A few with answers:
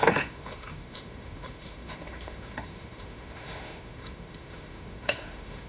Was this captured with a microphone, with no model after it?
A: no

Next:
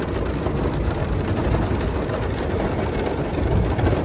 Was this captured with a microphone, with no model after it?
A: yes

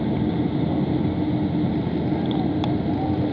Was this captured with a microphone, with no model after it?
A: yes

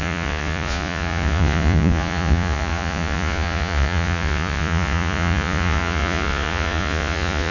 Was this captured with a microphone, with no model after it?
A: no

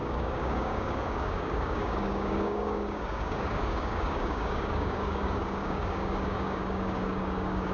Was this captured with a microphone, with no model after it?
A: no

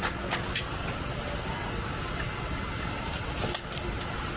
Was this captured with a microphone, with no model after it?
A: yes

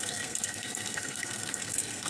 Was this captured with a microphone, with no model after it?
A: no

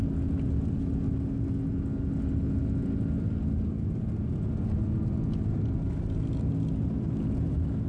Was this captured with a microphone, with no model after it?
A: yes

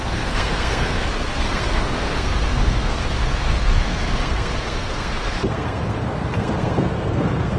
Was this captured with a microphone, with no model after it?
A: no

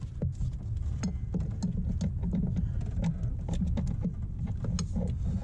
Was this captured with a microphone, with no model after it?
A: yes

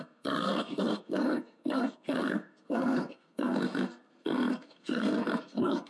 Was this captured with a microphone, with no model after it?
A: no